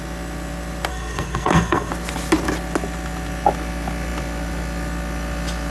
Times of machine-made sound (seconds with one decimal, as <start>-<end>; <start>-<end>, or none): 0.9-1.9